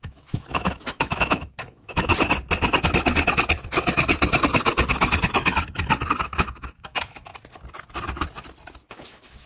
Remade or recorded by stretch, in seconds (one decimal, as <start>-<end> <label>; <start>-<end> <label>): 0.0-2.1 remade; 2.1-6.2 recorded; 6.2-7.3 remade; 7.3-8.9 recorded; 8.9-9.5 remade

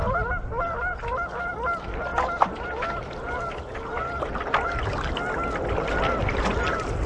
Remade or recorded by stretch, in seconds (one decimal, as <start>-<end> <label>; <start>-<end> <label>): 0.0-7.1 recorded

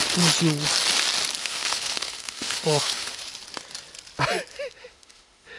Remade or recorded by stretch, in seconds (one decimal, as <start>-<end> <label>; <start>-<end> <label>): 0.0-1.4 recorded; 1.4-3.2 remade; 3.2-4.5 recorded; 4.5-5.6 remade